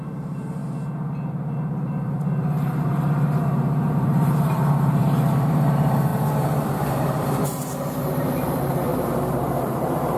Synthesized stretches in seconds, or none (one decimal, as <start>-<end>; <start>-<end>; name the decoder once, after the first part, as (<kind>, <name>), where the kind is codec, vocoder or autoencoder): 0.0-0.6 (vocoder, BigVGAN v2); 1.3-10.2